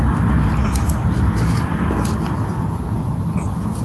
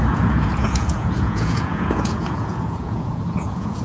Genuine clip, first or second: first